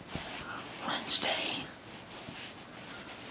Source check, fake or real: real